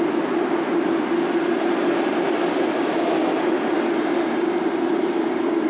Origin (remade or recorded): recorded